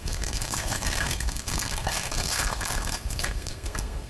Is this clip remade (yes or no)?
yes